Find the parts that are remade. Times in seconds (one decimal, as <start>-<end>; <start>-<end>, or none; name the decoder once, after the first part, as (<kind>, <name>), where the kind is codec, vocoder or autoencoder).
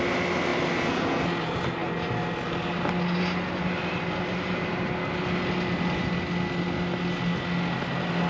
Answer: none